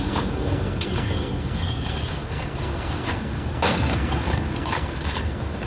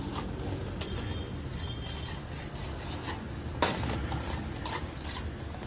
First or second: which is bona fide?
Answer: second